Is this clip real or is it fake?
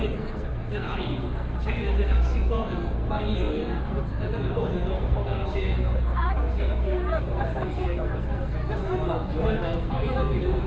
fake